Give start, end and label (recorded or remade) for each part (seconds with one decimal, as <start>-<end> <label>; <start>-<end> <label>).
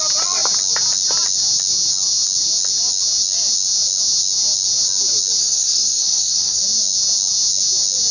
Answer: 0.0-5.4 recorded; 5.4-6.6 remade; 6.6-8.1 recorded